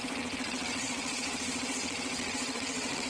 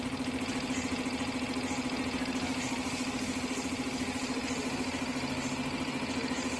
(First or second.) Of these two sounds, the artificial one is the first